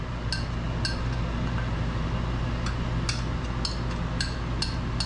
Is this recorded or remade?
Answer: recorded